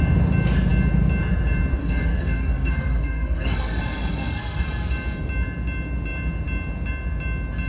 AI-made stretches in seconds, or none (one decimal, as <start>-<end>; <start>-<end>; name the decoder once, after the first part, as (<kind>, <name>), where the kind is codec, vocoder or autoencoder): 1.8-4.7 (codec, SNAC)